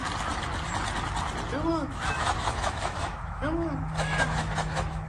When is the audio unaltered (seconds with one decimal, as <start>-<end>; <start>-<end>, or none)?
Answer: 0.0-1.7